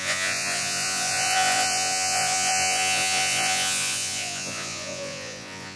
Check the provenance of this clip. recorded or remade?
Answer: remade